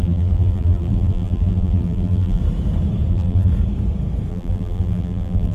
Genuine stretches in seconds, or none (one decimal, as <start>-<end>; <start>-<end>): 2.4-3.1; 3.5-4.3